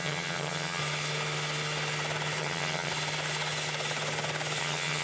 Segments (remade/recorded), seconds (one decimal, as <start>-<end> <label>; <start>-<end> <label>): 0.0-0.8 remade; 0.8-2.4 recorded; 2.4-2.9 remade; 2.9-4.6 recorded; 4.6-5.0 remade